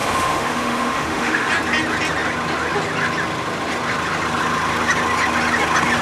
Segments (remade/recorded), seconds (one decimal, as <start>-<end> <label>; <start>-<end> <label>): 0.0-1.5 remade; 1.5-6.0 recorded